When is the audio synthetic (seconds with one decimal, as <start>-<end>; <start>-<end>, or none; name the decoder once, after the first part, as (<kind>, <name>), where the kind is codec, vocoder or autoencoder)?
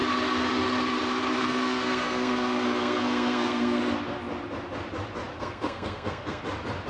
1.4-3.8 (codec, SNAC); 5.3-6.4